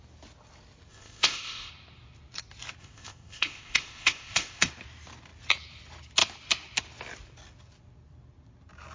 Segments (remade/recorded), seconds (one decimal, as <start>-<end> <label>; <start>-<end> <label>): 0.0-0.9 recorded; 0.9-1.7 remade; 1.7-2.8 recorded; 2.8-4.7 remade; 4.7-8.9 recorded